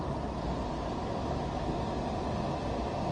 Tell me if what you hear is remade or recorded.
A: recorded